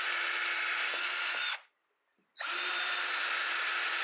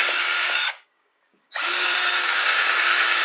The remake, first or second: second